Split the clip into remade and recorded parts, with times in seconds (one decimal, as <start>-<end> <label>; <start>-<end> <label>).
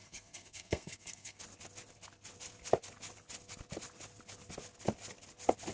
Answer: 0.0-1.4 remade; 1.4-5.7 recorded